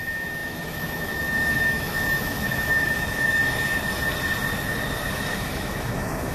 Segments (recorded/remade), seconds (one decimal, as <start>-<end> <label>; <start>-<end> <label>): 0.0-3.4 remade; 3.4-5.1 recorded; 5.1-6.3 remade